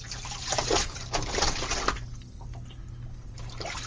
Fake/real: real